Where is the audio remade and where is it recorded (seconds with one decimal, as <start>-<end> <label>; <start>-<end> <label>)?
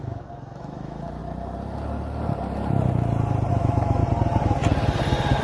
0.0-1.2 remade; 1.2-3.5 recorded; 3.5-4.0 remade; 4.0-5.4 recorded